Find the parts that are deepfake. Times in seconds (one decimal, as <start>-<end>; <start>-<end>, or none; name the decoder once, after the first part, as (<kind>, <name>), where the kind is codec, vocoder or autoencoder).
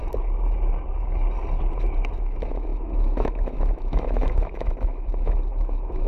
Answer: 2.2-6.1 (autoencoder, DAC-VAE)